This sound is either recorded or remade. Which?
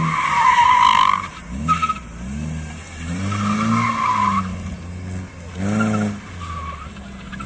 recorded